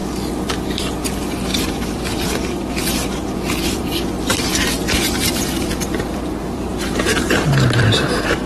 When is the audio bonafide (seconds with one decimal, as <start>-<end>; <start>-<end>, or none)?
0.0-1.5; 3.9-4.3

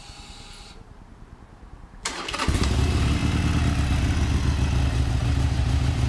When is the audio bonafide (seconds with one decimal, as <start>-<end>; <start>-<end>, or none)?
3.2-4.9

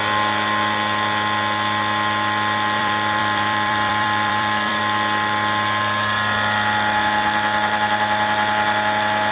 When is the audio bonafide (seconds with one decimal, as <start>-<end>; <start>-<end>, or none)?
0.0-2.8; 4.8-9.3

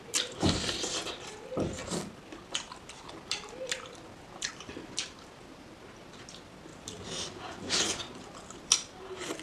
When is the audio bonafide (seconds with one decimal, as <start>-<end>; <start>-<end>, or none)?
none